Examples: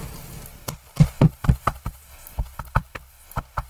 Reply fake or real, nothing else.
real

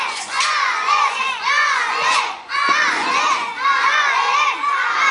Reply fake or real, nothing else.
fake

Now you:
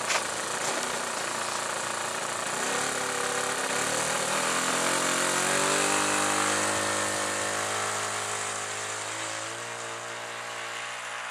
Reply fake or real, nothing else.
real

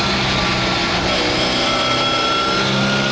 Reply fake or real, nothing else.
real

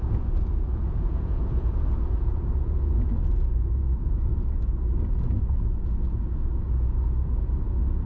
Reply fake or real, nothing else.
fake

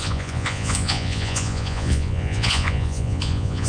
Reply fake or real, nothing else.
fake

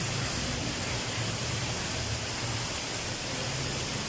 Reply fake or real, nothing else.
real